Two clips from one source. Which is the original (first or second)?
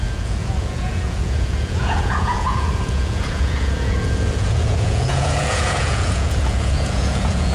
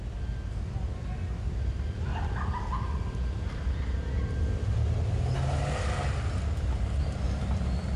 second